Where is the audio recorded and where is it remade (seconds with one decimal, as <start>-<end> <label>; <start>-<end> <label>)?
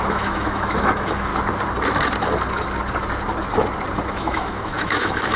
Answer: 0.0-1.3 remade; 1.3-4.1 recorded; 4.1-5.4 remade